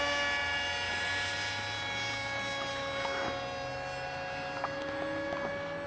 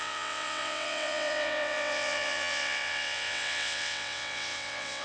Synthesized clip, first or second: second